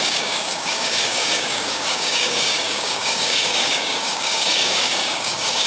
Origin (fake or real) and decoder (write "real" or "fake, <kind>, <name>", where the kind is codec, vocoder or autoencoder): fake, codec, DAC